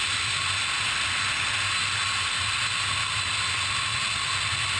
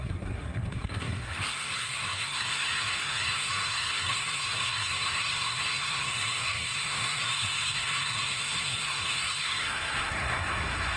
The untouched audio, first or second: first